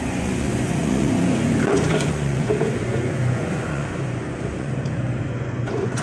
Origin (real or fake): fake